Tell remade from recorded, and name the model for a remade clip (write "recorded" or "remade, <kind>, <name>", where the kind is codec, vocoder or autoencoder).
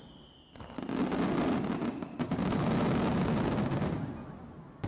recorded